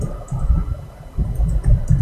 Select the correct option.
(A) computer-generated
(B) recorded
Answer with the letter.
A